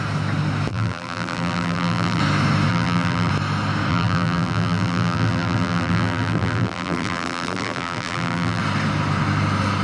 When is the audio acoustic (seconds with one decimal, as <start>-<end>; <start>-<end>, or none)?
0.0-0.7; 2.2-2.7; 3.3-3.9; 8.6-9.8